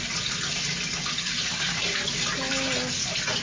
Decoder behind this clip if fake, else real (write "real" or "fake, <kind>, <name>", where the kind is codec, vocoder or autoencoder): real